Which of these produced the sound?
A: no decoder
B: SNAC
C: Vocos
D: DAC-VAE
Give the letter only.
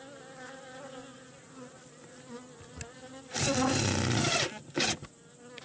A